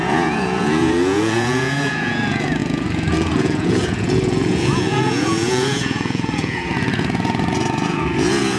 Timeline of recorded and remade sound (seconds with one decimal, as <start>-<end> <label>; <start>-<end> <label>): 0.0-8.6 remade